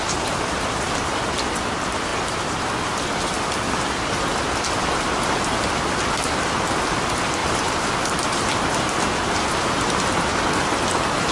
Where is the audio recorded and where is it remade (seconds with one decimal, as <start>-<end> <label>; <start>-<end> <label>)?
0.0-11.3 recorded